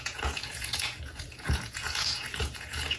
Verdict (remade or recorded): remade